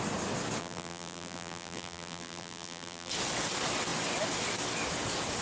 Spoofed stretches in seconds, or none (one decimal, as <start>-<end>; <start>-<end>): 0.6-3.1